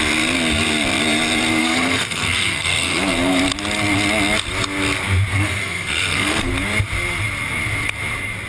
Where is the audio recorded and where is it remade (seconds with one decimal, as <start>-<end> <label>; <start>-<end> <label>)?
0.0-1.6 recorded; 1.6-3.4 remade; 3.4-5.3 recorded; 5.3-6.5 remade; 6.5-8.5 recorded